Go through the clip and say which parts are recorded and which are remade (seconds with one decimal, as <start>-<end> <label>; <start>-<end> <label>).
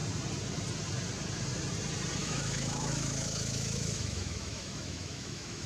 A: 0.0-2.2 recorded; 2.2-5.7 remade